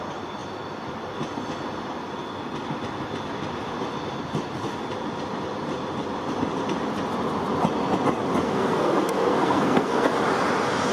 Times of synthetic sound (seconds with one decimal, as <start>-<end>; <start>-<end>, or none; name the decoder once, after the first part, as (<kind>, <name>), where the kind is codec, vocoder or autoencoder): 8.4-10.1 (codec, SNAC)